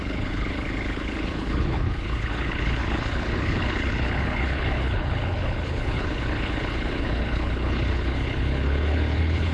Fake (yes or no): yes